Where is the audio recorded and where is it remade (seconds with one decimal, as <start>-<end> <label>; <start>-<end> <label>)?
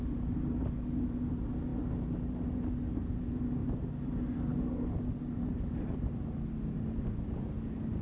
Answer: 0.0-8.0 recorded